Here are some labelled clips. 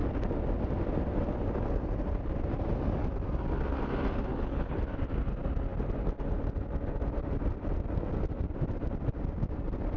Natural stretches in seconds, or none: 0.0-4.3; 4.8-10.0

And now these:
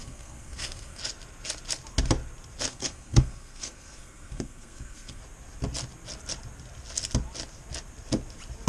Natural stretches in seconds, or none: 1.0-2.7; 5.2-8.7

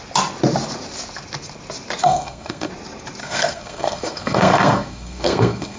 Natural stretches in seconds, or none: 0.0-2.0; 2.7-3.2

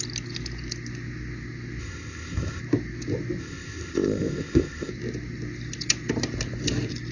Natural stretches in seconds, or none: 0.0-1.8; 2.6-3.4; 4.9-7.1